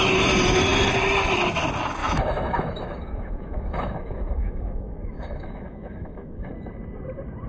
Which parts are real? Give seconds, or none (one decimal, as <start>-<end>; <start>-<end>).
0.0-2.0; 6.5-7.5